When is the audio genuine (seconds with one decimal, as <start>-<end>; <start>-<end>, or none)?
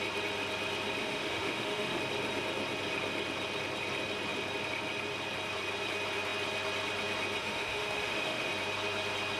0.0-1.0; 2.0-7.4; 8.5-9.4